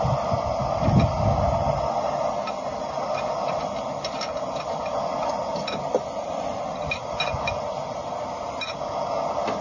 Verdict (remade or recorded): recorded